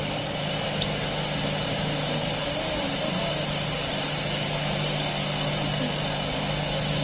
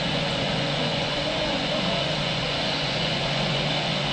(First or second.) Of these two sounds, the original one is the first